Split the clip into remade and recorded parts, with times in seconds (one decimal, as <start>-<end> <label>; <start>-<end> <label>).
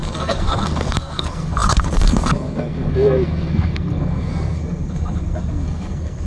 0.0-6.3 remade